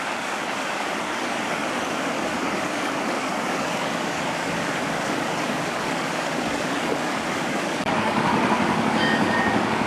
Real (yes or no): no